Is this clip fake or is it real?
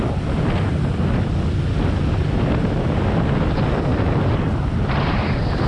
real